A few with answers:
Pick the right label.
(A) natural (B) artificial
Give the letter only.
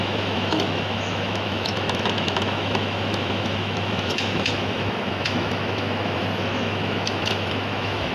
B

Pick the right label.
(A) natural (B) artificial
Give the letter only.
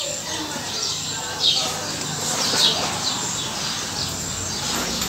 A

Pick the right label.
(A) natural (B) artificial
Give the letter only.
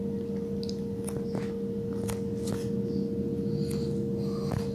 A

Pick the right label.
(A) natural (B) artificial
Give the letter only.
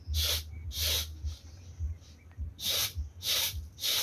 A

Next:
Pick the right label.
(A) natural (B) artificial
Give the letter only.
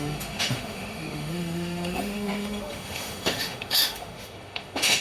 B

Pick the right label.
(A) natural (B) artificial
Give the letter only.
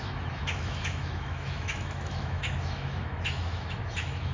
B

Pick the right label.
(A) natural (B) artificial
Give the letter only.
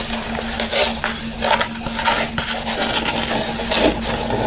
A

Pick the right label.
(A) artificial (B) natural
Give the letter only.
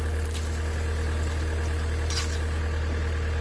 B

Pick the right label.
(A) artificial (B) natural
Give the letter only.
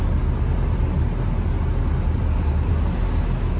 B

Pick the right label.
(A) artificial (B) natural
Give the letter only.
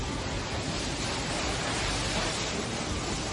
B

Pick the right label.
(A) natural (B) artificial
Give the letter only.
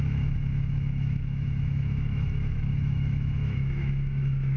B